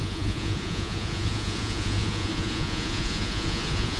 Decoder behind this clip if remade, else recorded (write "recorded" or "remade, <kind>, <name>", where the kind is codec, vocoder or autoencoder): remade, vocoder, Vocos